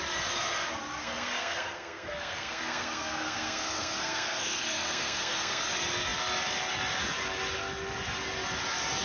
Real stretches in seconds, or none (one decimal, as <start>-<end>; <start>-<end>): 0.0-1.0; 5.6-9.0